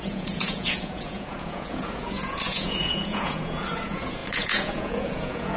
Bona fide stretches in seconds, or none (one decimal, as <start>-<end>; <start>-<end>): none